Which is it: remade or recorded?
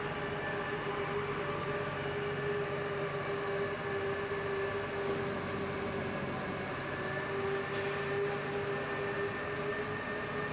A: recorded